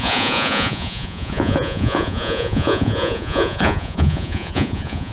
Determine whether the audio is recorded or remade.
remade